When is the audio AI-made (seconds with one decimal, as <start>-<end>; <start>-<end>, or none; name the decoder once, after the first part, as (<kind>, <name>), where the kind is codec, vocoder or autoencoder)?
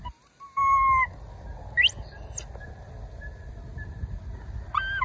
none